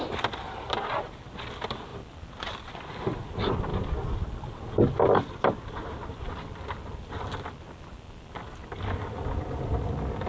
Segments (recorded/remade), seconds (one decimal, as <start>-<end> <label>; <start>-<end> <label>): 0.0-3.7 remade; 3.7-7.5 recorded; 7.5-10.3 remade

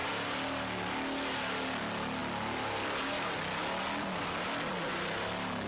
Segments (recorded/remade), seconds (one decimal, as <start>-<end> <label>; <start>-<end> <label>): 0.0-5.7 recorded

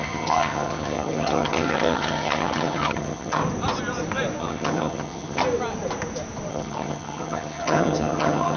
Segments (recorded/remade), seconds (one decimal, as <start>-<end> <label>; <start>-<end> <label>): 0.0-3.4 remade; 3.4-4.4 recorded; 4.4-5.4 remade; 5.4-6.5 recorded; 6.5-8.6 remade

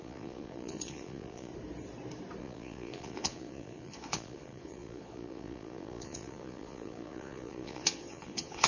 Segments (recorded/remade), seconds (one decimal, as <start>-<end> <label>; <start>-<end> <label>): 0.0-1.5 remade; 1.5-2.4 recorded; 2.4-8.7 remade

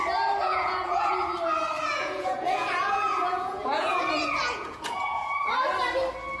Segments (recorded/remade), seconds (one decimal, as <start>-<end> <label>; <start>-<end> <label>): 0.0-0.4 recorded; 0.4-1.1 remade; 1.1-1.9 recorded; 1.9-5.3 remade; 5.3-6.4 recorded

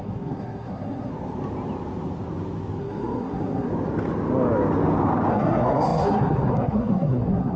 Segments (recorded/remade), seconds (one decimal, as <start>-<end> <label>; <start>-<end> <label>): 0.0-1.1 remade; 1.1-2.8 recorded; 2.8-3.7 remade; 3.7-5.3 recorded; 5.3-7.6 remade

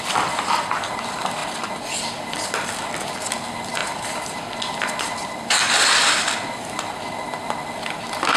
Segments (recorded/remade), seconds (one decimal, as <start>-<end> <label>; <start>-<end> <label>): 0.0-8.4 recorded

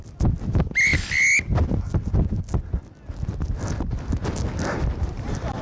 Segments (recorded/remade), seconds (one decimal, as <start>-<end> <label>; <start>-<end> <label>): 0.0-5.6 recorded